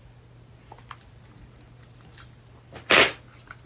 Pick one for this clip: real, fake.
real